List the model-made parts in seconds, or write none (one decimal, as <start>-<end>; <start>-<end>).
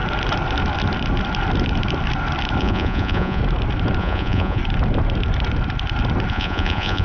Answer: 2.6-3.4; 4.0-4.6; 6.3-7.0